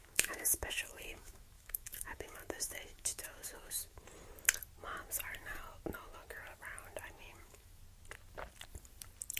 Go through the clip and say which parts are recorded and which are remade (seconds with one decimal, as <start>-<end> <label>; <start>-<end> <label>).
0.0-4.0 remade; 4.0-7.3 recorded; 7.3-7.8 remade; 7.8-9.4 recorded